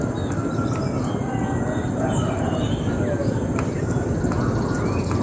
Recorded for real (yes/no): yes